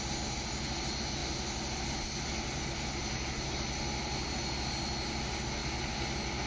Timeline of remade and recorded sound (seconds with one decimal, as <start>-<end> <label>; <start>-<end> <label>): 0.0-6.5 recorded